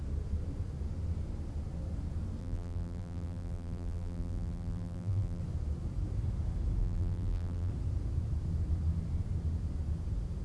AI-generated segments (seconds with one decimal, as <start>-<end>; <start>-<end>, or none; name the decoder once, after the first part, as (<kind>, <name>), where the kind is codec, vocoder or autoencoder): 2.4-5.4 (vocoder, BigVGAN v2); 6.8-7.7